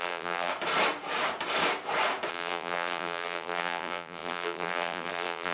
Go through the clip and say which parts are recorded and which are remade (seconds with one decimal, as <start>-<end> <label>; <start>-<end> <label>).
0.0-0.5 remade; 0.5-2.3 recorded; 2.3-5.5 remade